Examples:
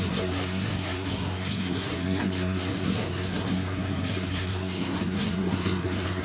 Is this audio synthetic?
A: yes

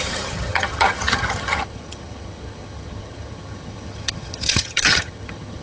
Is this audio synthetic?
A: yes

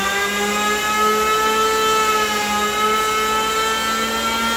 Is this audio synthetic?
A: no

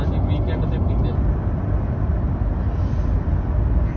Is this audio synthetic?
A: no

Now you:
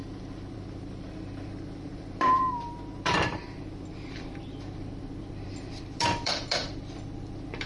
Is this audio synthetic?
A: yes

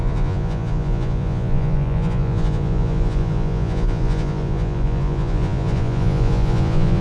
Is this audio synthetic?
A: yes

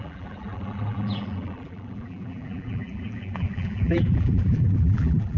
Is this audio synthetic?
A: yes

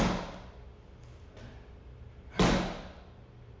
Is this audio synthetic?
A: no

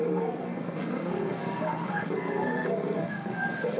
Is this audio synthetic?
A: yes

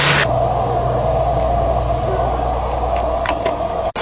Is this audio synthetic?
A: no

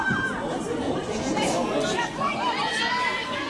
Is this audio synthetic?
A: no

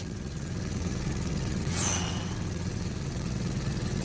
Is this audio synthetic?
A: yes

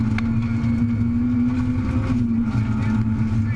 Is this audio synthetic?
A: no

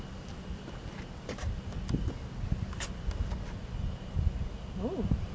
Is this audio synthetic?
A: no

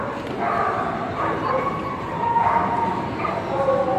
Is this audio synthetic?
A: no